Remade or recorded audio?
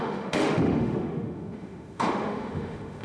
remade